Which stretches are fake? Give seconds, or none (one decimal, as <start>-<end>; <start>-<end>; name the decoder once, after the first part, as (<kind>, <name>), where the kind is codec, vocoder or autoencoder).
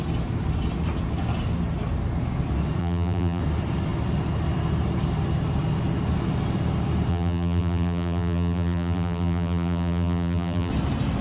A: 2.8-3.4 (vocoder, BigVGAN v2); 7.1-10.7